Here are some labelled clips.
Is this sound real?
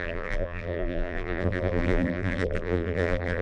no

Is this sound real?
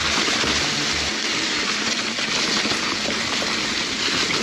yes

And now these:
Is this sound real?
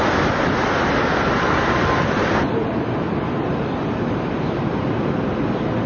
yes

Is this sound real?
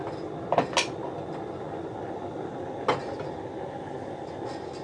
yes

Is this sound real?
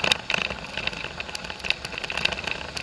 yes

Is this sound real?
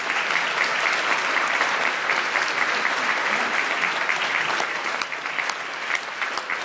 yes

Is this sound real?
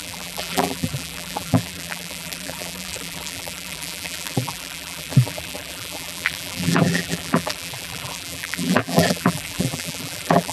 no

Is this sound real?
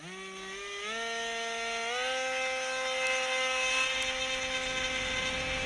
yes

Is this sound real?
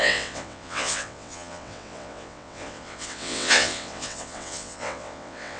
no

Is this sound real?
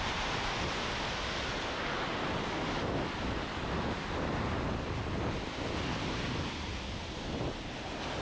yes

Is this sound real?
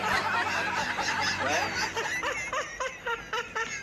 yes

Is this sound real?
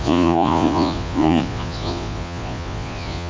no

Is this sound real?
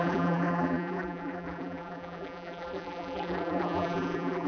no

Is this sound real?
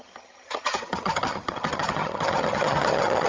no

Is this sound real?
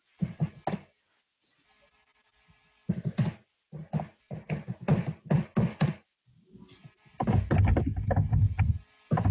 yes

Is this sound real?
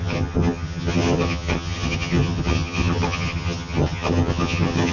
no